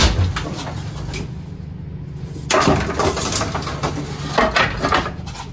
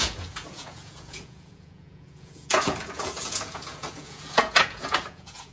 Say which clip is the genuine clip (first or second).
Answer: first